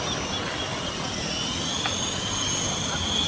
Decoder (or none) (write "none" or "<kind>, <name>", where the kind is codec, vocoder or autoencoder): none